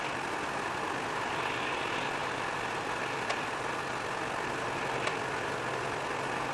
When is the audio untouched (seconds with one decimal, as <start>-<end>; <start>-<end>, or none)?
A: 0.0-6.5